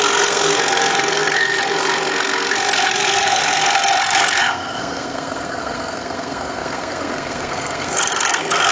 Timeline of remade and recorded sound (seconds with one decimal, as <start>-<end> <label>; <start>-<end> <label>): 0.0-8.7 remade